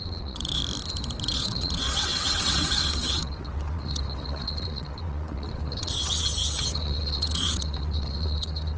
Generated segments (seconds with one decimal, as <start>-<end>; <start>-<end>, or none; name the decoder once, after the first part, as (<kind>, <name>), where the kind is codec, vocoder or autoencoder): 0.0-0.6 (vocoder, WaveNeXt); 1.2-8.8